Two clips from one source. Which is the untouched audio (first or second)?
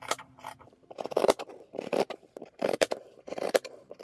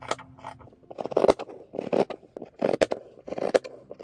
second